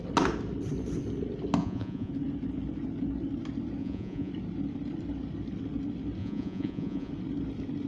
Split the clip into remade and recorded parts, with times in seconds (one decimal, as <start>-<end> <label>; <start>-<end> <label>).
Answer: 0.0-1.6 recorded; 1.6-2.1 remade; 2.1-3.8 recorded; 3.8-4.3 remade; 4.3-6.2 recorded; 6.2-7.1 remade; 7.1-7.9 recorded